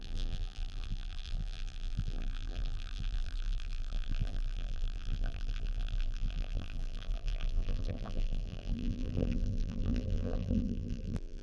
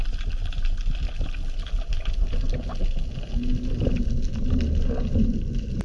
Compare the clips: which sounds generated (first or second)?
first